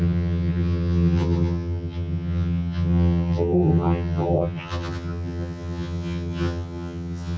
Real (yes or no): no